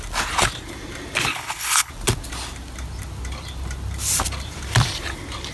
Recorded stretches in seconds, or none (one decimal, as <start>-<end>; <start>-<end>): 0.0-1.3; 1.9-5.5